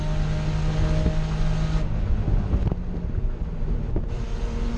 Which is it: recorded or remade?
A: recorded